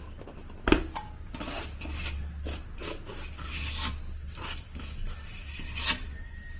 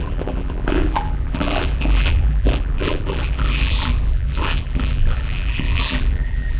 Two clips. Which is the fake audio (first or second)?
second